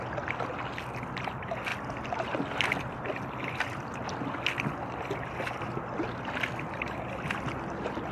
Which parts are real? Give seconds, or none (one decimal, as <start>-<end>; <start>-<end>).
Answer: 0.0-8.1